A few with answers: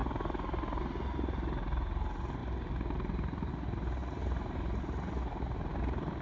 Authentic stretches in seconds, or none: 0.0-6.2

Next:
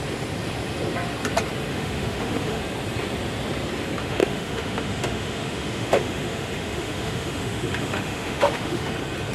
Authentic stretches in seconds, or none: 0.0-1.7; 2.6-4.0; 8.9-9.3

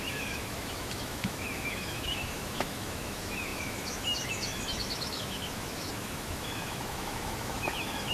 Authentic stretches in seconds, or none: none